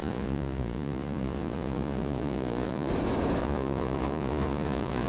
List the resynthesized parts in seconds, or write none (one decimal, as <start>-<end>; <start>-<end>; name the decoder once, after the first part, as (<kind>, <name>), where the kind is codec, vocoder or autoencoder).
0.0-2.9 (vocoder, Vocos); 3.4-5.1